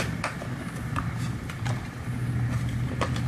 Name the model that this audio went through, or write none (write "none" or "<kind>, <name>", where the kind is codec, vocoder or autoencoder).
none